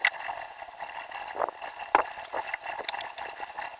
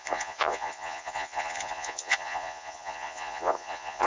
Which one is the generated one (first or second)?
second